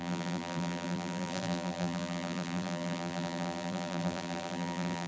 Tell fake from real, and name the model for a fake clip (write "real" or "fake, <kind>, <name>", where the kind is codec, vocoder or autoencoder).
fake, vocoder, BigVGAN v2